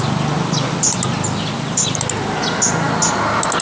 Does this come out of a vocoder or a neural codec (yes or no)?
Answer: no